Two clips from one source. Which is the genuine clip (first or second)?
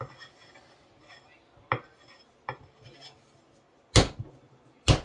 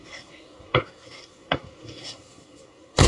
first